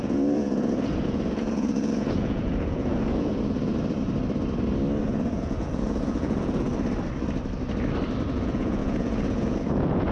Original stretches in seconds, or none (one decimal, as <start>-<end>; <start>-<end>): 3.7-5.0; 6.7-8.3